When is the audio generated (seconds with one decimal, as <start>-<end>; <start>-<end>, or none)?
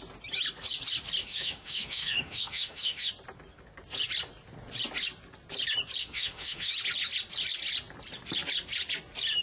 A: 1.2-3.1; 6.0-6.7